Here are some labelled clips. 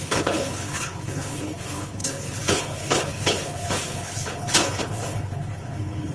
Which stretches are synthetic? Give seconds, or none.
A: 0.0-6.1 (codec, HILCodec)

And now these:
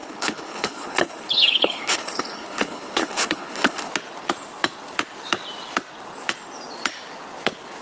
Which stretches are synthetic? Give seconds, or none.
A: 0.0-3.9 (codec, HILCodec)

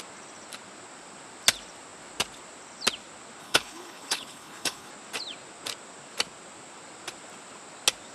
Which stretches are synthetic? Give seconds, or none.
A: 3.4-4.9 (codec, HILCodec)

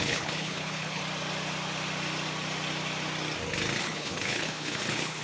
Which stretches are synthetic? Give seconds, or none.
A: 0.0-1.0 (codec, HILCodec); 3.8-5.2

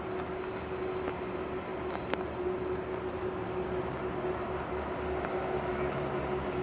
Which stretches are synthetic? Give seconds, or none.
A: none

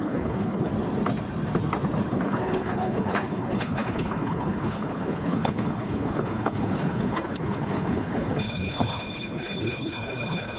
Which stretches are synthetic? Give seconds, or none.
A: 0.0-0.7 (codec, HILCodec); 2.1-10.6